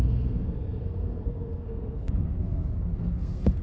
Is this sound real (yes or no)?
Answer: no